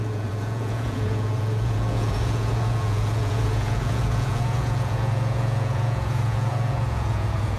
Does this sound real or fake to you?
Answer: fake